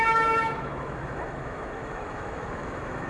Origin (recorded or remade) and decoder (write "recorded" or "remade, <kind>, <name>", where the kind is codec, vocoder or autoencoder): remade, autoencoder, DAC-VAE